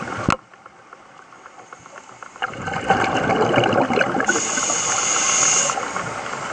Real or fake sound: real